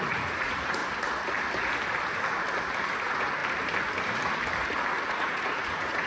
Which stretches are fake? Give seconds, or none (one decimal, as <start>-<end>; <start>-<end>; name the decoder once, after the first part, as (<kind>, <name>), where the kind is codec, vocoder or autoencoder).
0.0-0.8 (vocoder, Vocos); 3.0-3.4; 5.0-6.1

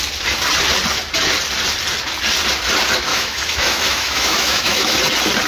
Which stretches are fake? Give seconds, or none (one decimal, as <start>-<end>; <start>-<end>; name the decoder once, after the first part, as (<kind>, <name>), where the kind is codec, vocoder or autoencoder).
3.1-5.0 (autoencoder, DAC-VAE)

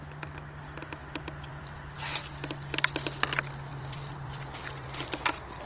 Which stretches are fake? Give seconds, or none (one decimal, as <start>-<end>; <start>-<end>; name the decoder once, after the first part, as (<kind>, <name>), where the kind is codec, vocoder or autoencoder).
1.0-1.7 (vocoder, BigVGAN v2); 3.7-5.1